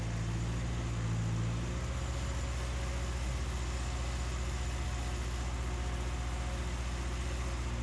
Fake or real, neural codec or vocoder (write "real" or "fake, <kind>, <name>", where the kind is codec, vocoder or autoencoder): real